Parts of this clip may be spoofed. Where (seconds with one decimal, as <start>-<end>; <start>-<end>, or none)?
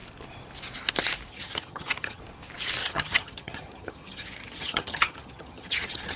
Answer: 1.3-2.2; 2.8-6.2